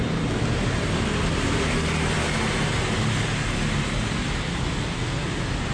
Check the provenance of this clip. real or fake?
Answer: real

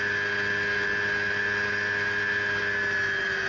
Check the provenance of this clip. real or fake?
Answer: real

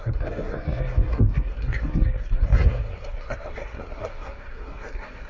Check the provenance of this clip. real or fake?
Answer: fake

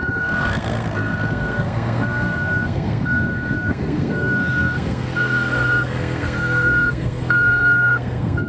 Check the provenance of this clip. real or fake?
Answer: fake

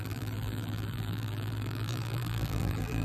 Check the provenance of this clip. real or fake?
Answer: fake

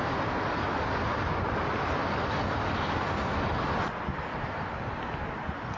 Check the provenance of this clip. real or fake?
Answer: real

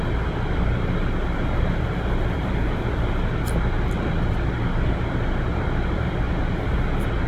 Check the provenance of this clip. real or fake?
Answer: real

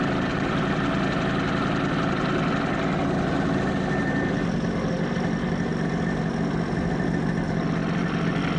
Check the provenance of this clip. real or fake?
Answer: real